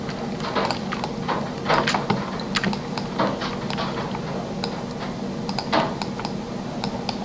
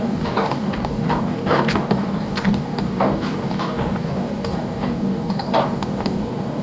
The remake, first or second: second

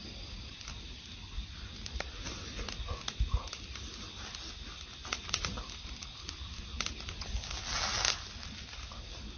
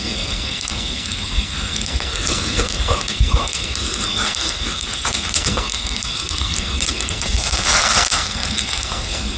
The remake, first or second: second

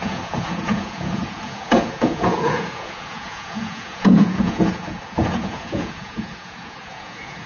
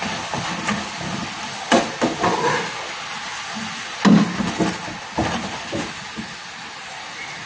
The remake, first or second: first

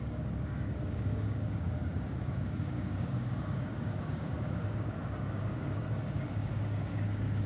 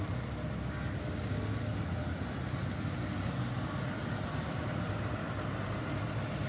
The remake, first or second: first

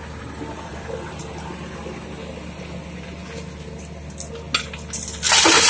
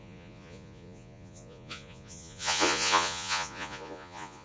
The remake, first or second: second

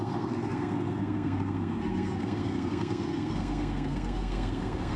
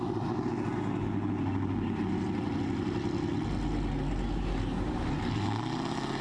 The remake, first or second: first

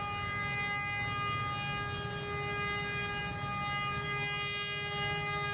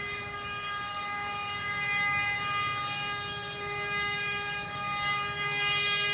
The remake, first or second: second